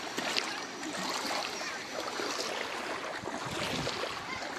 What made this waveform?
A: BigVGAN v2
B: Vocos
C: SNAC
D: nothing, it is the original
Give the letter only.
D